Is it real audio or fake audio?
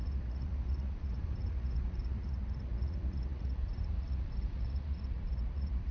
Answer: fake